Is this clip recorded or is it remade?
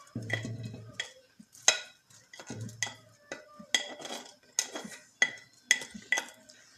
recorded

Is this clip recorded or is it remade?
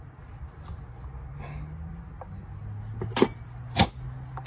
recorded